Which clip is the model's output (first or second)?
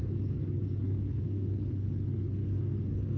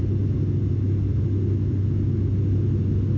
first